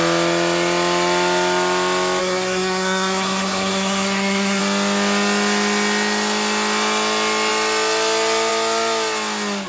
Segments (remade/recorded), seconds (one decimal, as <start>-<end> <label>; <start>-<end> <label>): 0.0-2.2 recorded; 2.2-4.6 remade; 4.6-9.7 recorded